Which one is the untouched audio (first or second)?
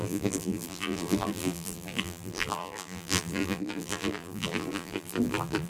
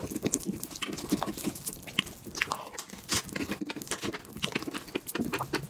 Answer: second